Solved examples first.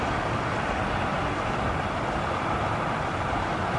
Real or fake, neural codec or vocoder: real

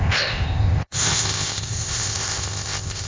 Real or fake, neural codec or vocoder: fake, codec, ZipCodec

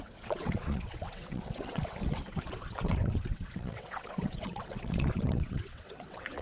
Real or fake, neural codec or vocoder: fake, vocoder, WaveNeXt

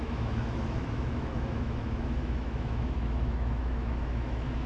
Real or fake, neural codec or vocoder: fake, autoencoder, DAC-VAE